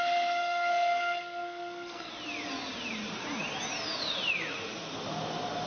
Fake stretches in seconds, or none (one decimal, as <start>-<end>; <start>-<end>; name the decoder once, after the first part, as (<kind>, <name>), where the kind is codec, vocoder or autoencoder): 0.7-2.1 (codec, SNAC)